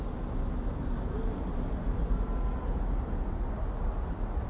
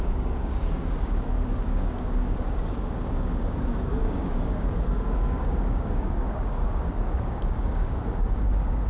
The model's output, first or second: second